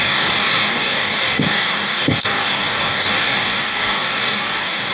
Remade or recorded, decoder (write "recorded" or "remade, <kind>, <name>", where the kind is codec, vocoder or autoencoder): remade, codec, DAC